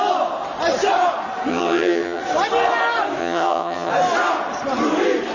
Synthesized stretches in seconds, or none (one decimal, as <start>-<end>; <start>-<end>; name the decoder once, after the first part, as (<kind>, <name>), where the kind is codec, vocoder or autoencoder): 1.5-2.2 (vocoder, HiFi-GAN); 3.2-3.9

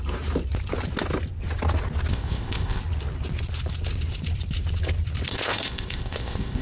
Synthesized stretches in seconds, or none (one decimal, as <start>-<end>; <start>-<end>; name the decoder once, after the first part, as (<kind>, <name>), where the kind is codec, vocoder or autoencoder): 2.1-2.8 (codec, ZipCodec); 5.3-6.6